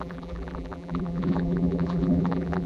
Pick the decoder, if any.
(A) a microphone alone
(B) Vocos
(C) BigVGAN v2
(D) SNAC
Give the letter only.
C